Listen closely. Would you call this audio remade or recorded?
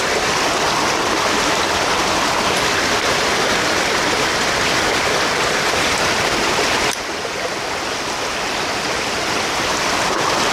remade